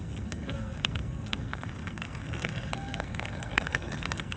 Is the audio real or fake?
fake